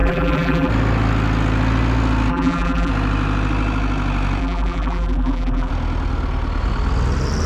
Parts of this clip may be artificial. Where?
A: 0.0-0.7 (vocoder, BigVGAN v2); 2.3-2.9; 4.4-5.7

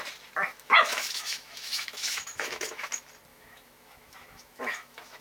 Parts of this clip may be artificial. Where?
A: 0.5-2.9 (autoencoder, DAC-VAE); 3.3-5.2

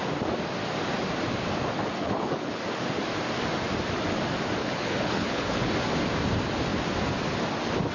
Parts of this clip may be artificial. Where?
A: 2.0-2.6 (codec, HILCodec); 4.6-5.7

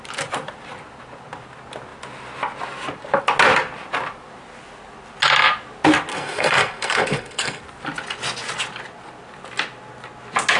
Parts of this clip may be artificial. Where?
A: 6.1-7.6 (codec, SNAC)

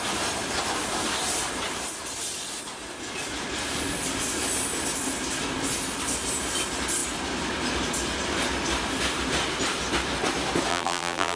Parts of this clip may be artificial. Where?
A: 10.7-11.4 (vocoder, BigVGAN v2)